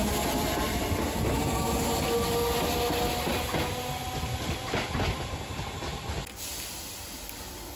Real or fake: real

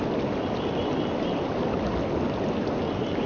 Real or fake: real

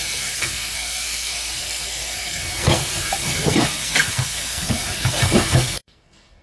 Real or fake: fake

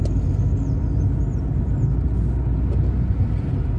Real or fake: real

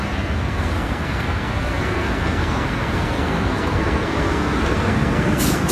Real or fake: fake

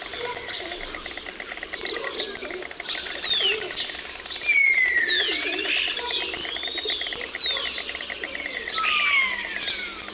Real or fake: real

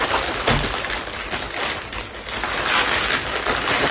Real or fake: real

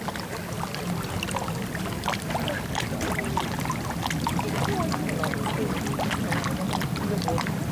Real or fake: real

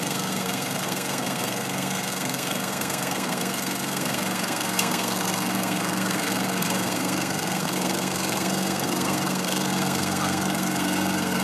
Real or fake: fake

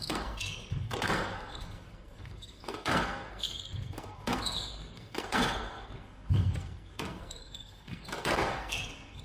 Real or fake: fake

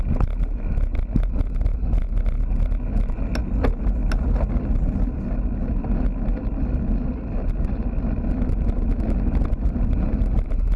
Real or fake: real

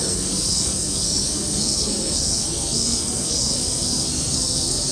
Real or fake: fake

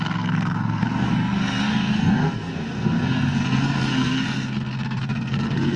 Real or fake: fake